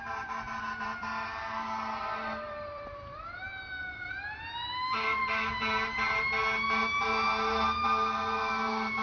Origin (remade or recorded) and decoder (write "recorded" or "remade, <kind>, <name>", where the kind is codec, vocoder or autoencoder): remade, vocoder, BigVGAN v2